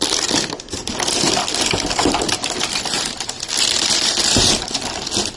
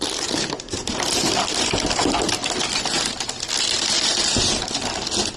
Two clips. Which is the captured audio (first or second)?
second